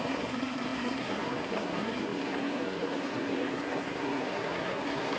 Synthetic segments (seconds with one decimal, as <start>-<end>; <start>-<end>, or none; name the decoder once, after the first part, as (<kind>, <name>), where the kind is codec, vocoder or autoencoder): 0.0-5.2 (codec, SNAC)